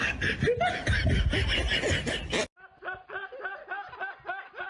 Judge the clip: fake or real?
real